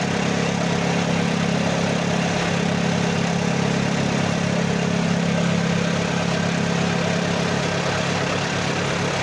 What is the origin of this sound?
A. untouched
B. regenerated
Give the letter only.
A